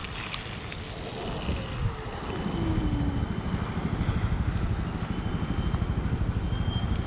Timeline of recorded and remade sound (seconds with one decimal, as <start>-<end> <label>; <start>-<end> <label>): 0.0-7.1 recorded